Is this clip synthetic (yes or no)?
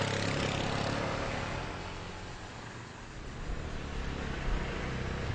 no